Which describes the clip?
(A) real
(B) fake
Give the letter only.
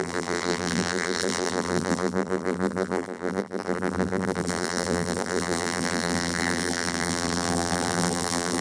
B